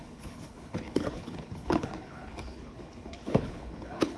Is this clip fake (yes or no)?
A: yes